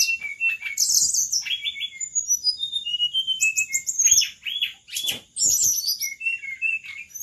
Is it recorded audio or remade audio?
recorded